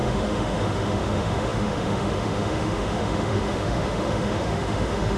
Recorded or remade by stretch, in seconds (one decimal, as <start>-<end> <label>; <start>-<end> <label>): 0.0-5.2 remade